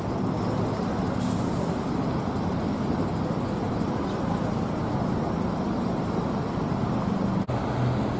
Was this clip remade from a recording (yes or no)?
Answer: no